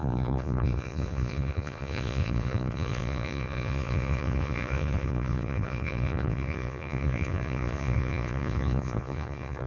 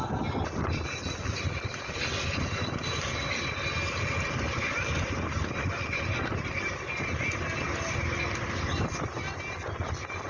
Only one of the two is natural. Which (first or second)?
second